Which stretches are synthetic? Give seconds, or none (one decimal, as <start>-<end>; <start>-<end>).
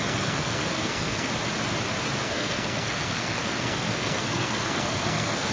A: 0.0-1.3; 2.2-5.5